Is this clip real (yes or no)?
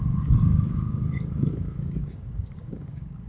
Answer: no